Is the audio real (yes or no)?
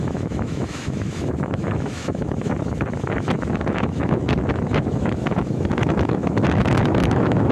no